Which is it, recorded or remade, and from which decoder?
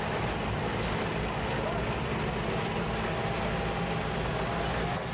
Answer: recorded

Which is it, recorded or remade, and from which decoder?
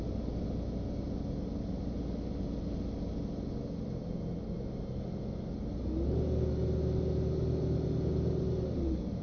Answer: recorded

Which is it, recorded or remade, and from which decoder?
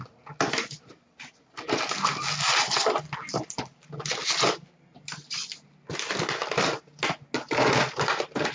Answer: recorded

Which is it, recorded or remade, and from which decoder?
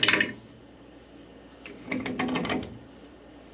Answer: recorded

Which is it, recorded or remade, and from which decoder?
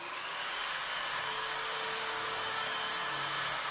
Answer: remade, codec, DAC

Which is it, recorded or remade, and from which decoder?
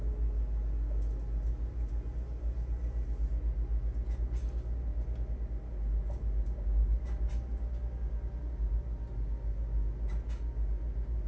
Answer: recorded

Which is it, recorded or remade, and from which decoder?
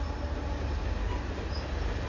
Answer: recorded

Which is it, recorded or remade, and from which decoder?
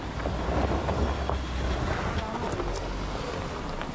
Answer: recorded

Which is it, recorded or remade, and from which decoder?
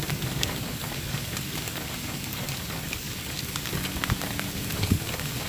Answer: remade, codec, DAC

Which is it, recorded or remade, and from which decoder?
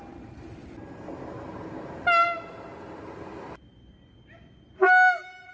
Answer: recorded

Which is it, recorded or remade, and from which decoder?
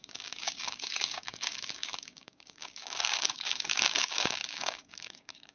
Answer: remade, codec, DAC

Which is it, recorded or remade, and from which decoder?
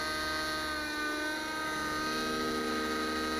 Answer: recorded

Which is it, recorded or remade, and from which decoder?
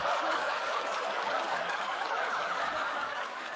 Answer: remade, codec, DAC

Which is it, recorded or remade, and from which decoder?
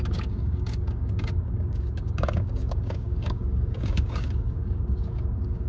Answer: remade, codec, DAC